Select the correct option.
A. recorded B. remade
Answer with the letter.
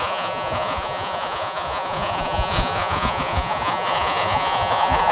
B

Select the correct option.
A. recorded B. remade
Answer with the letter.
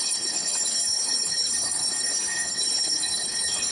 B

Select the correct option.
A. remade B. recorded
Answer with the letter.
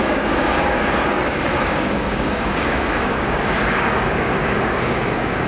A